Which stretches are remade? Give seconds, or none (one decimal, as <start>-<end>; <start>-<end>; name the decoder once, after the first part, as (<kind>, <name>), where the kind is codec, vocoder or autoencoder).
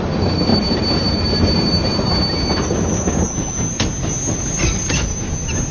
none